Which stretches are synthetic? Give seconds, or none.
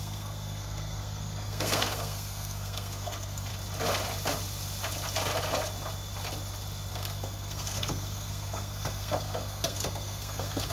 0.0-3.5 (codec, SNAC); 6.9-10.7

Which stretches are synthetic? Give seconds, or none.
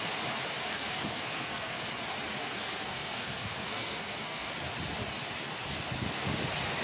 0.6-1.9 (codec, SNAC); 2.4-4.5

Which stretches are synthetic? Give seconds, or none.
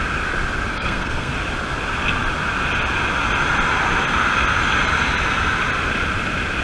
0.7-1.3 (codec, SNAC)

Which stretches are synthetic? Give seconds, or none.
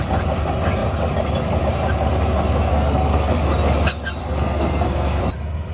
2.7-3.4 (codec, SNAC); 4.2-5.2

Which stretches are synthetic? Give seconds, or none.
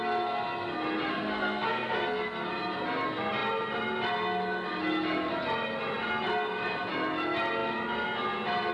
1.1-2.5 (codec, SNAC)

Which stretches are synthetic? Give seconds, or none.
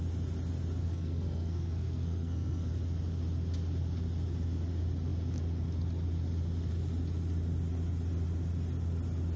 0.8-2.7 (codec, SNAC)